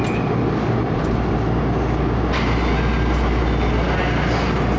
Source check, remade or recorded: recorded